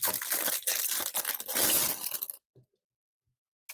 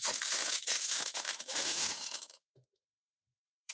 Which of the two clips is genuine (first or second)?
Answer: first